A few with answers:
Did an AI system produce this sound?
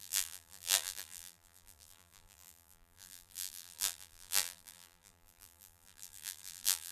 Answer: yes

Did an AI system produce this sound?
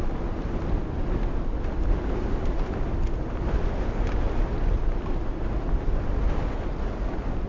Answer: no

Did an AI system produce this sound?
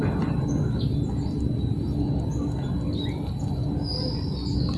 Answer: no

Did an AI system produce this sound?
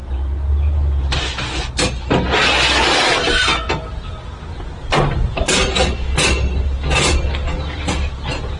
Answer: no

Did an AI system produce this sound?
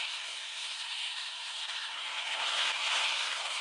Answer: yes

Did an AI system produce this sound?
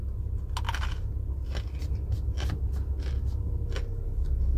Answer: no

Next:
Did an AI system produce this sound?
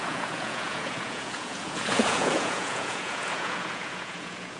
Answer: yes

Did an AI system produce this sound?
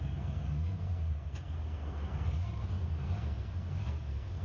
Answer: yes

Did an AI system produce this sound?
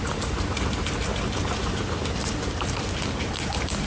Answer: no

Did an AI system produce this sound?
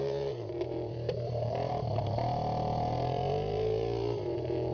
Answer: yes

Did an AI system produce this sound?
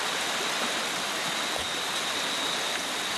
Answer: no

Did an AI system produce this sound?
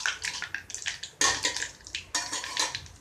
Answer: no